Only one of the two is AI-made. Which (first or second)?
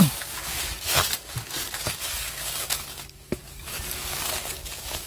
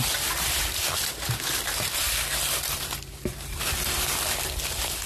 first